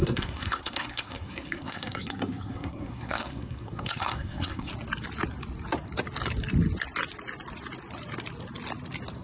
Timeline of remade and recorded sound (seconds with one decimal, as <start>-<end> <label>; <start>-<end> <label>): 0.0-4.7 remade; 4.7-9.2 recorded